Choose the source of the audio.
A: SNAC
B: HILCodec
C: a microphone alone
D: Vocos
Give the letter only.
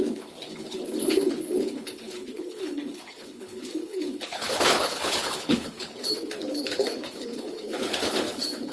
B